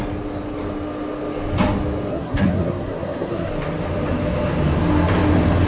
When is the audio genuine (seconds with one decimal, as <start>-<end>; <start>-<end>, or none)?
0.0-2.1; 3.5-5.7